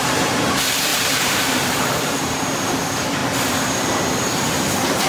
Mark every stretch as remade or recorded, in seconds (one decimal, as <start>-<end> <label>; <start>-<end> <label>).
0.0-3.2 remade; 3.2-4.2 recorded; 4.2-5.1 remade